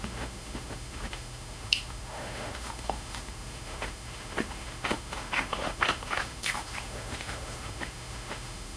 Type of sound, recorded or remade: remade